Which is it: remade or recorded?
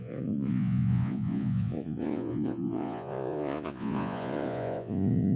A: remade